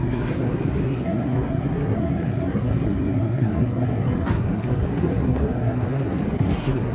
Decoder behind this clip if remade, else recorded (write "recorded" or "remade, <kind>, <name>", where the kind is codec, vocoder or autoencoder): remade, codec, SNAC